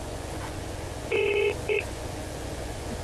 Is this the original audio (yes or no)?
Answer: no